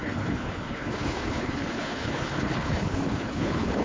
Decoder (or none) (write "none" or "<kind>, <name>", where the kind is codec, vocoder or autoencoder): codec, HILCodec